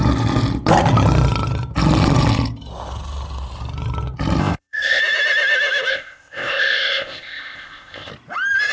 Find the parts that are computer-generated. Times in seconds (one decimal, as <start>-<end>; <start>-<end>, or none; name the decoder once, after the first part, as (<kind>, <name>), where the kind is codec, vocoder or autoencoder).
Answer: 4.4-5.0 (codec, ZipCodec); 5.9-8.1